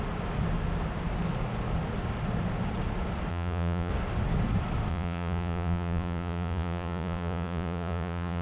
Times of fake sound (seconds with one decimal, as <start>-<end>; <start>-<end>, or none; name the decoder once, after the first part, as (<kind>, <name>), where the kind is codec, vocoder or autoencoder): 3.3-3.9 (vocoder, Vocos); 4.9-8.4